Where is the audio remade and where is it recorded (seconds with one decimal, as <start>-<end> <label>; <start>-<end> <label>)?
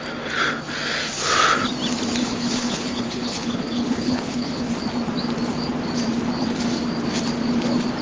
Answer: 0.0-2.2 recorded; 2.2-4.7 remade; 4.7-8.0 recorded